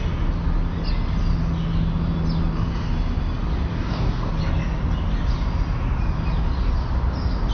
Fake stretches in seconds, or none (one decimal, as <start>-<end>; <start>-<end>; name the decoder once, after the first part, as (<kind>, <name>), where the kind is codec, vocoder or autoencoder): 3.7-4.3 (codec, DAC)